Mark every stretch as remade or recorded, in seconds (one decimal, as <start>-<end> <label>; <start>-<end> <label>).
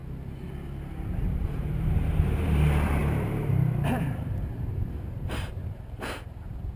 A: 0.0-1.3 recorded; 1.3-6.8 remade